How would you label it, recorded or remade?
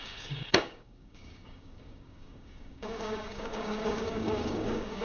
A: remade